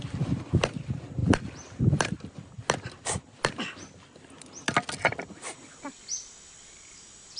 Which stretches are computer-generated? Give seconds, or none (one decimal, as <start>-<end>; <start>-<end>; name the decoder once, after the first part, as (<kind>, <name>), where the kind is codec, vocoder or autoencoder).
none